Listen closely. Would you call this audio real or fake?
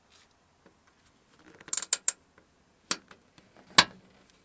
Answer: real